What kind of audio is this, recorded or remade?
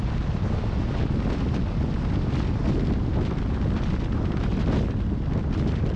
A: recorded